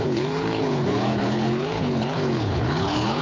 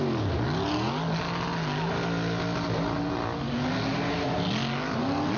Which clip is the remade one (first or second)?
first